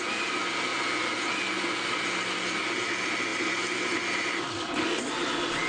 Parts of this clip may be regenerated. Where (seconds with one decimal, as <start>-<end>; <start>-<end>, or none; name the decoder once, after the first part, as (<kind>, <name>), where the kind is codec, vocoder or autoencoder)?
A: none